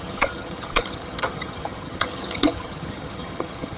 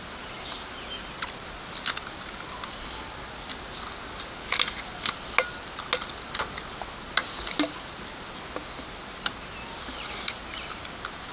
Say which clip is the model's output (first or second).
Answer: first